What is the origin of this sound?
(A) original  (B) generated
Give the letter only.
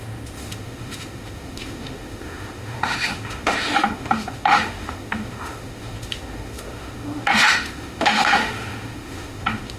B